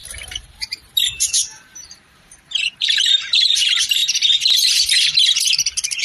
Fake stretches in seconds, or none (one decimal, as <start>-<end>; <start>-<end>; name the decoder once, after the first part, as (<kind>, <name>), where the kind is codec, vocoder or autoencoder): 0.0-3.6 (vocoder, BigVGAN v2)